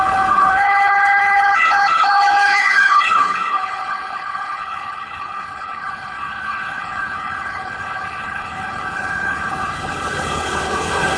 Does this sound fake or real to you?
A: fake